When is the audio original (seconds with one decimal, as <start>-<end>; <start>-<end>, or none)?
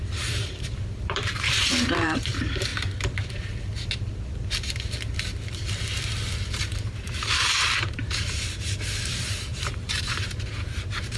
2.7-6.6